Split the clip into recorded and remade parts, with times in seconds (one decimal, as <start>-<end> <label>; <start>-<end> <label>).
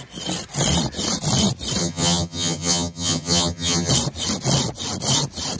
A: 0.0-1.8 recorded; 1.8-3.9 remade; 3.9-5.6 recorded